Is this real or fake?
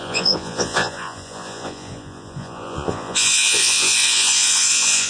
fake